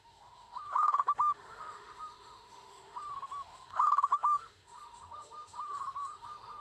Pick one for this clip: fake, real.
fake